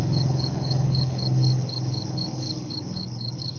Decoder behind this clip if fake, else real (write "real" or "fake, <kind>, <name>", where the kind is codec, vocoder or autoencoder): fake, codec, HILCodec